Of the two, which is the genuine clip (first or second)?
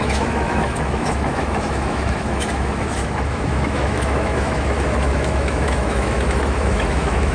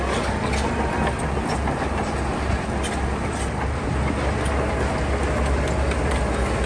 second